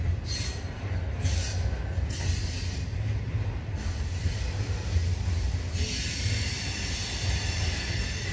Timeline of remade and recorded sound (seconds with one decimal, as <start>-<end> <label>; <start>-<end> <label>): 0.0-8.3 recorded